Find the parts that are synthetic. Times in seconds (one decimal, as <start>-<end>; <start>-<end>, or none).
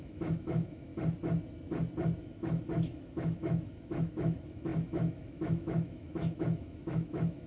0.0-0.9; 2.2-7.5